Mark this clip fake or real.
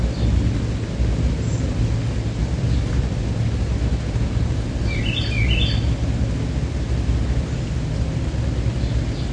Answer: real